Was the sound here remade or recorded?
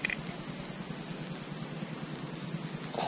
recorded